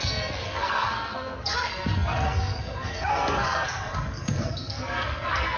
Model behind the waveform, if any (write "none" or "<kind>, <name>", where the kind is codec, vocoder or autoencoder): codec, SNAC